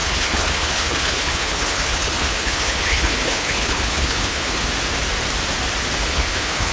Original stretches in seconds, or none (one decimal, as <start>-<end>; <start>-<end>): 4.7-6.1

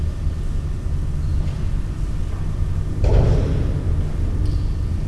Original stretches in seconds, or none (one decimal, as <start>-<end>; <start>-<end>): 0.0-1.3; 3.1-5.1